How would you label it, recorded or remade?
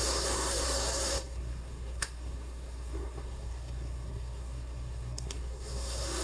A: remade